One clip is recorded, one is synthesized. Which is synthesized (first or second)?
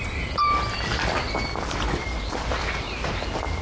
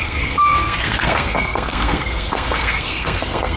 second